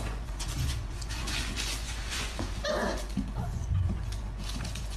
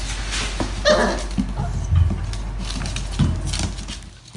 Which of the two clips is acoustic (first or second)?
second